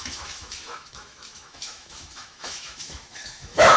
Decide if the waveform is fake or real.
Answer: fake